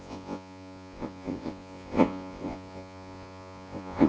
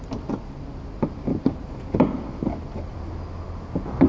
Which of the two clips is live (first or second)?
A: second